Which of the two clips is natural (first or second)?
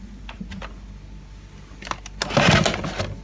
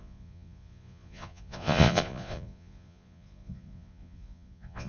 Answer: first